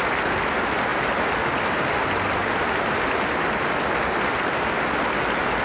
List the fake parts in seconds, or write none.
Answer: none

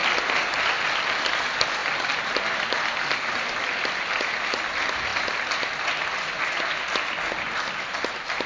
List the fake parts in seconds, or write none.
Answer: none

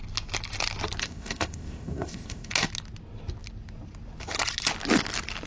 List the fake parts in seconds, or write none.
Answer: 1.0-2.5 (codec, ZipCodec)

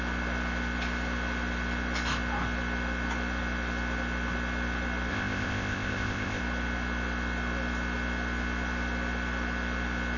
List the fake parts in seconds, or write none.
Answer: 5.1-6.4 (codec, ZipCodec)

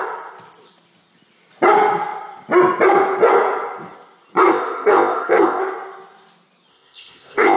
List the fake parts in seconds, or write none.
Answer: 4.5-5.6 (codec, ZipCodec); 6.7-7.6